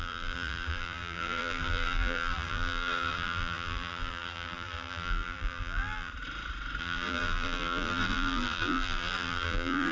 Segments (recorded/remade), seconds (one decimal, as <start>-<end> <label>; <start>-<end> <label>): 0.0-6.1 remade; 6.1-6.8 recorded; 6.8-9.9 remade